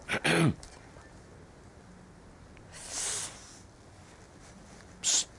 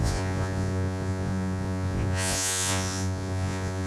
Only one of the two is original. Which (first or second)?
first